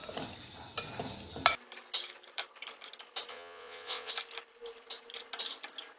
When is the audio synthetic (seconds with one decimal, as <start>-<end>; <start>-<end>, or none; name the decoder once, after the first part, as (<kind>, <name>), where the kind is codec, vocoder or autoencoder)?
3.3-4.1 (vocoder, WaveNeXt)